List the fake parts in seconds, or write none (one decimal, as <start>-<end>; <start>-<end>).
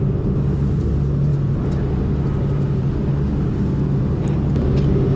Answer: none